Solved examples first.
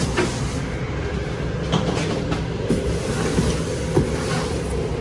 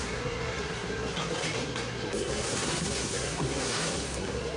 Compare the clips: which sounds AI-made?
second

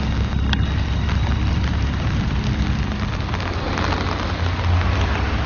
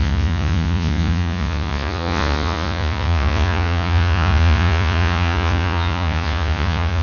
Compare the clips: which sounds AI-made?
second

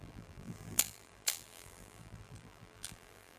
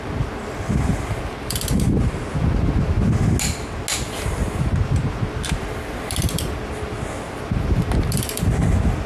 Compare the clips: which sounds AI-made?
first